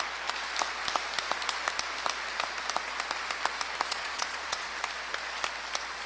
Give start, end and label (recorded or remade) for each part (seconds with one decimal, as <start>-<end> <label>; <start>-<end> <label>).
0.0-3.9 recorded; 3.9-4.7 remade; 4.7-6.1 recorded